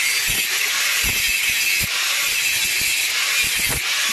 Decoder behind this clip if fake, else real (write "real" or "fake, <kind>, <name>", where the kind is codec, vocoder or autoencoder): real